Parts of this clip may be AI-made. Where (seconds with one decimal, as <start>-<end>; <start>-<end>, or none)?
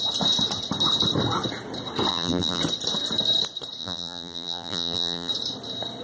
2.1-2.6; 3.8-5.3